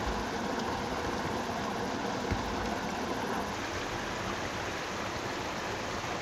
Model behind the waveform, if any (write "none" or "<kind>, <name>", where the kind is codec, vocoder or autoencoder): none